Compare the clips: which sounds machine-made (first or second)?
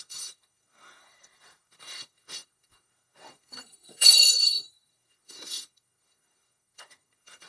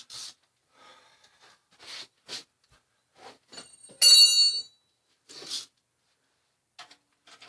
first